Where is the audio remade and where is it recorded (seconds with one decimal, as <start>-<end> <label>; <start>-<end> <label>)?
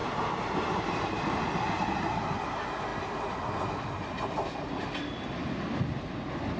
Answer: 0.0-6.6 recorded